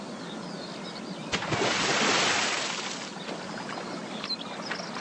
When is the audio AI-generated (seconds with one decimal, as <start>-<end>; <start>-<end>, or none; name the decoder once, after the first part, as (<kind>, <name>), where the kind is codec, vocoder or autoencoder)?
none

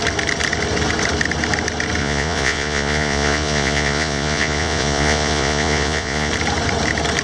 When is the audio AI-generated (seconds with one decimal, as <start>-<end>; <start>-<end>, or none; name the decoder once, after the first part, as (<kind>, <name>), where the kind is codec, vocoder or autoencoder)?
2.0-6.3 (vocoder, Vocos)

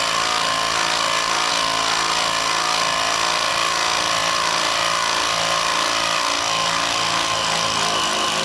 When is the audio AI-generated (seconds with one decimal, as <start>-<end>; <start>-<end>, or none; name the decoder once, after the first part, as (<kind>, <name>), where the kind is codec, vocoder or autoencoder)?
4.2-6.2 (vocoder, BigVGAN v2)

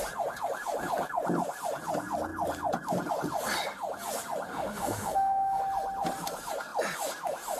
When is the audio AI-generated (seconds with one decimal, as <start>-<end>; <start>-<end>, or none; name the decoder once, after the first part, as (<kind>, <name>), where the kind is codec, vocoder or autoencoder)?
4.5-5.6 (autoencoder, DAC-VAE)

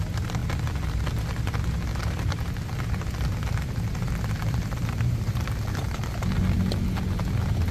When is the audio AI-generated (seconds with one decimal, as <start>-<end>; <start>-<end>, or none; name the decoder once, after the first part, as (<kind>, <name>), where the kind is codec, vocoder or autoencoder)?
1.9-2.4 (vocoder, BigVGAN v2); 4.4-5.3

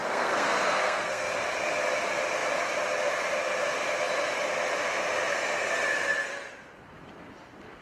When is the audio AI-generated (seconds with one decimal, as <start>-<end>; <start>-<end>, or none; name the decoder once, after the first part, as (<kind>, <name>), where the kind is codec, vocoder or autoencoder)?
0.0-1.3 (codec, SNAC)

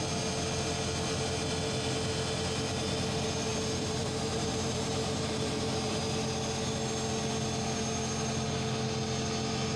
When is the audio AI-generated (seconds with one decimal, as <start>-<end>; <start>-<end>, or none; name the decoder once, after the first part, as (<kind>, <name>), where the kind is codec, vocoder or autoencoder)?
3.5-6.0 (vocoder, BigVGAN v2)

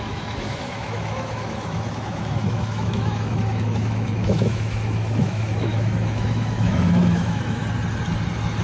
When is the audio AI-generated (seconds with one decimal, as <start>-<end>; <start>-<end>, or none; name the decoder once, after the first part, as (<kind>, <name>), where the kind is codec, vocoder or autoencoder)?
0.0-7.6 (autoencoder, DAC-VAE)